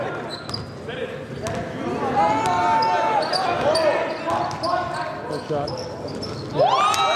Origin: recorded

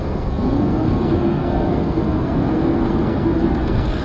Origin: remade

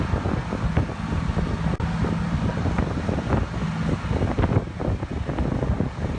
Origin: recorded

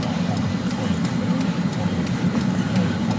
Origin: recorded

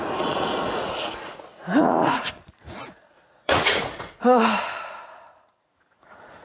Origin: remade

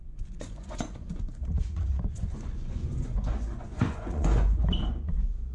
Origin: remade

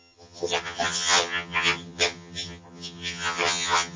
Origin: remade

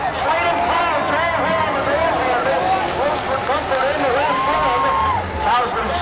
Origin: recorded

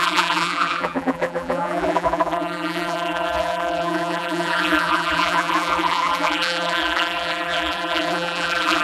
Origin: remade